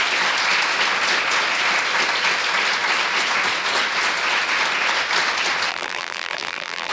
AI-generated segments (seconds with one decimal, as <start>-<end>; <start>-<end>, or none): 5.7-6.9